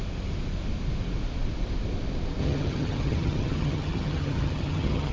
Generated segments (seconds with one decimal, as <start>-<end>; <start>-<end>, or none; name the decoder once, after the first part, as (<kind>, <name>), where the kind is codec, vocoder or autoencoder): 2.4-5.1 (vocoder, HiFi-GAN)